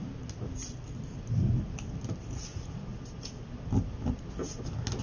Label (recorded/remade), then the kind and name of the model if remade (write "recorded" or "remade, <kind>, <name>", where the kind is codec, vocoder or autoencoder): recorded